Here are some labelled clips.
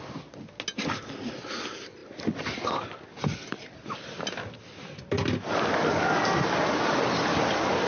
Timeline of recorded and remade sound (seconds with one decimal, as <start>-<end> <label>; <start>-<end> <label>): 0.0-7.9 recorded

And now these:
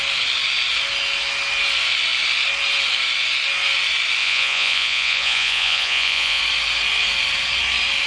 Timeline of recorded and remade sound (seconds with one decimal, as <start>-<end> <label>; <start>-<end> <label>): 0.0-4.2 recorded; 4.2-6.4 remade; 6.4-8.1 recorded

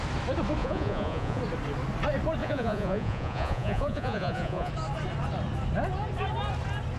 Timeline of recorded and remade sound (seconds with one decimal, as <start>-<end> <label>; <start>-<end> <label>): 0.0-0.6 recorded; 0.6-1.4 remade; 1.4-2.4 recorded; 2.4-4.7 remade; 4.7-7.0 recorded

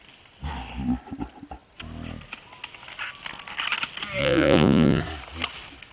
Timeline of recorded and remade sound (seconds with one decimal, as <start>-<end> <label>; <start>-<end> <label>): 0.0-4.2 recorded; 4.2-5.0 remade; 5.0-5.9 recorded

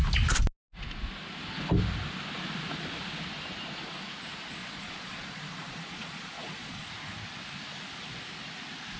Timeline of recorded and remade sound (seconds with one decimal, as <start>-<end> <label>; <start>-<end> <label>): 0.0-4.6 recorded; 4.6-6.9 remade; 6.9-9.0 recorded

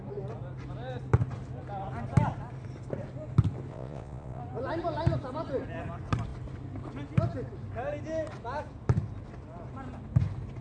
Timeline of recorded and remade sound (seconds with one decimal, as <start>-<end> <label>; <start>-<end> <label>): 0.0-3.7 recorded; 3.7-4.4 remade; 4.4-10.6 recorded